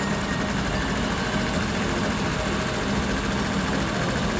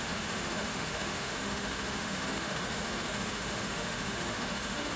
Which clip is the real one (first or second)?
first